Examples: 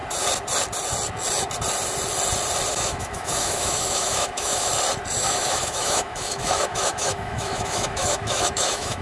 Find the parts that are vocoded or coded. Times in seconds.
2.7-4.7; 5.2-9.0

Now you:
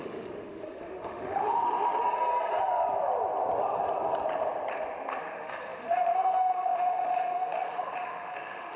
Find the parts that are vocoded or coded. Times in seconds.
0.0-2.0; 5.2-8.8

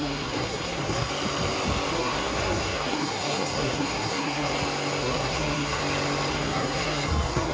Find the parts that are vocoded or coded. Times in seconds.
0.0-1.1; 1.9-4.5; 5.0-5.8; 6.3-7.5

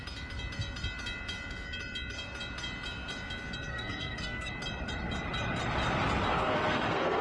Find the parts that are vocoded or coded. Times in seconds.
3.7-4.5; 6.3-7.2

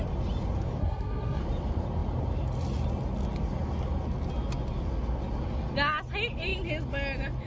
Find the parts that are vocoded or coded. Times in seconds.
0.8-1.4